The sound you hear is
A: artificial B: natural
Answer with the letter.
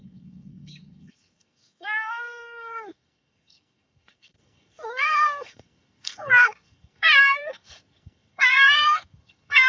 A